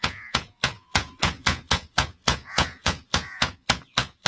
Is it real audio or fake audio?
fake